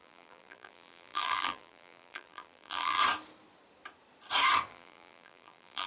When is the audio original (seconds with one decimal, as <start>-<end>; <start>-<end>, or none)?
3.0-4.7